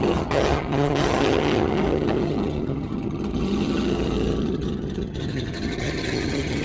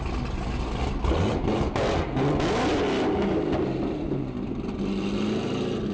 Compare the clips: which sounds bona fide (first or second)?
second